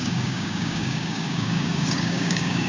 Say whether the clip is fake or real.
fake